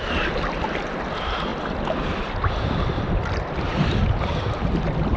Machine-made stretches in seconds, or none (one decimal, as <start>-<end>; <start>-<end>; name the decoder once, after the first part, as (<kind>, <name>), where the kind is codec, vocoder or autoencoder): 1.5-4.6 (vocoder, BigVGAN v2)